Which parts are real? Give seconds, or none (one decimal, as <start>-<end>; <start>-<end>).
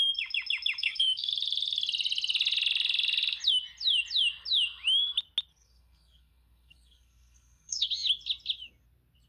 0.0-0.8; 1.3-5.5; 7.9-9.3